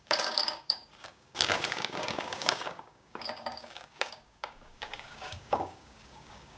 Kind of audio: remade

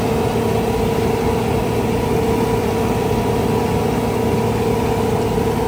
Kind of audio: recorded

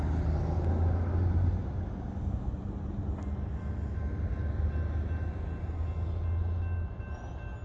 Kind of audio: recorded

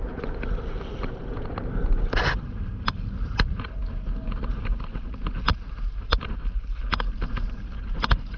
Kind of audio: recorded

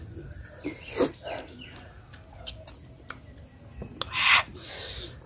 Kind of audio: recorded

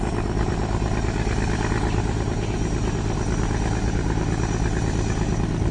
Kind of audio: recorded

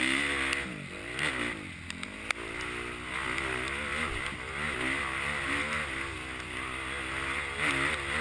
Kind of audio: recorded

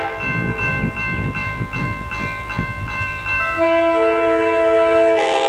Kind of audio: remade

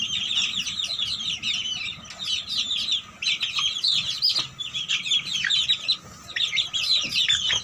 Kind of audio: recorded